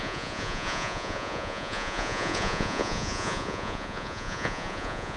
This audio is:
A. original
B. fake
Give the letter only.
B